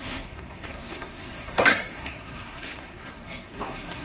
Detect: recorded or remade remade